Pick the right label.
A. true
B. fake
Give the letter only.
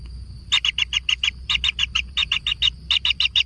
A